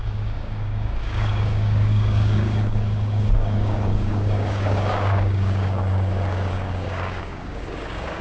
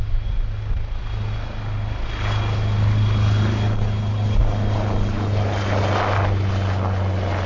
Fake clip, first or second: first